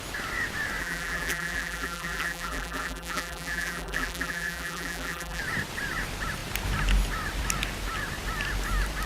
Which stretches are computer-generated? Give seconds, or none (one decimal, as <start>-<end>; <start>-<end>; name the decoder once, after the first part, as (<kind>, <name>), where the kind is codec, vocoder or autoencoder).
0.8-5.4 (vocoder, BigVGAN v2)